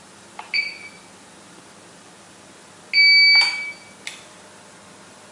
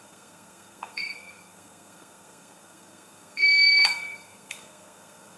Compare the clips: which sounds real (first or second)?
first